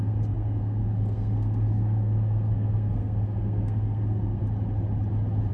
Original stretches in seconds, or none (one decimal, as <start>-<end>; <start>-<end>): 4.4-5.5